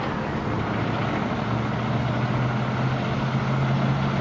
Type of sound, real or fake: real